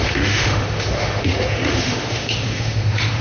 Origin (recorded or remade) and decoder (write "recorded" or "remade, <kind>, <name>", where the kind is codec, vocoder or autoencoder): remade, autoencoder, DAC-VAE